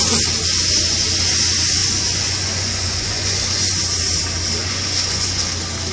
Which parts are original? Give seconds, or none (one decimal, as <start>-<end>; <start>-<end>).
0.0-1.8; 3.8-4.6; 5.4-5.9